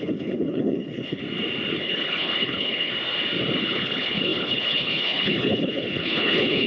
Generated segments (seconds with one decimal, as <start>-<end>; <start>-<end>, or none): 0.0-1.2; 1.8-2.9; 3.6-6.7